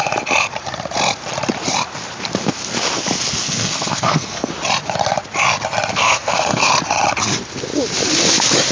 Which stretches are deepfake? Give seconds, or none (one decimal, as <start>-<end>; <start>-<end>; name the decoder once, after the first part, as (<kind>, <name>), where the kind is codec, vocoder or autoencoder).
3.4-4.5 (codec, SNAC); 5.9-6.7